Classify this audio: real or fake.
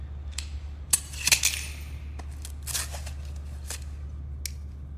real